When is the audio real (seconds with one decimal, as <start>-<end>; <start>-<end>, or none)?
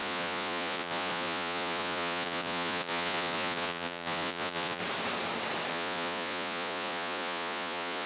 4.8-5.7